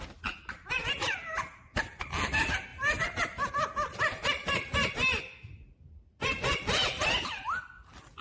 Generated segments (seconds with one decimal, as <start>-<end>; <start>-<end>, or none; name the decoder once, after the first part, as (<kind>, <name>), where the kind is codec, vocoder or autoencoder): none